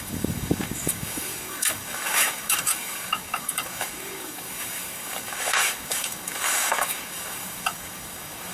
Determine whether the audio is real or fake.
fake